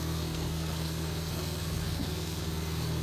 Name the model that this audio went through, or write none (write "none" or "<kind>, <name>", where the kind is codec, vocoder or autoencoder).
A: codec, SNAC